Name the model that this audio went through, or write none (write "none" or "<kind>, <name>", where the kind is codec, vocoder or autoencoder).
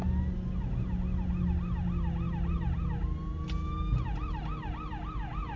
none